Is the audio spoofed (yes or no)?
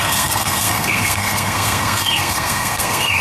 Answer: yes